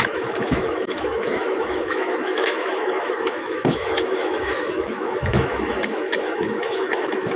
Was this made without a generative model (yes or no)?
no